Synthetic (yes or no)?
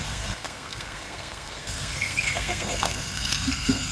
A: yes